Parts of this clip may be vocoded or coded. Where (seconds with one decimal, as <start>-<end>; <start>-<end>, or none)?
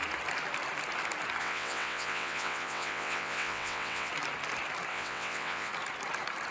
1.4-4.1; 4.9-5.7